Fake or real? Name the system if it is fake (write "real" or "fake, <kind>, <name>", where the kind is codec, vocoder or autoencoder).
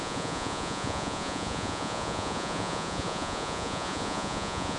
fake, vocoder, Vocos